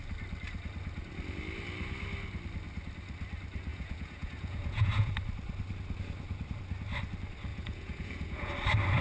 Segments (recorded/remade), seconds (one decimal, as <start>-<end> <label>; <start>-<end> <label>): 0.0-3.7 recorded; 3.7-5.1 remade; 5.1-7.5 recorded; 7.5-8.5 remade; 8.5-9.0 recorded